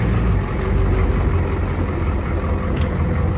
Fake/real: real